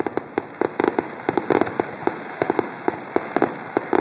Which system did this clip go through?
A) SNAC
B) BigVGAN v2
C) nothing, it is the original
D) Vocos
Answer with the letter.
C